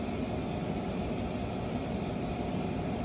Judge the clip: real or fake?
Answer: fake